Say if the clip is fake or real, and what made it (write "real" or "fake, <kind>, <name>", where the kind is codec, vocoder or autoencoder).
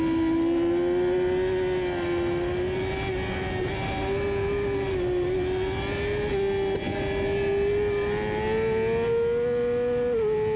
real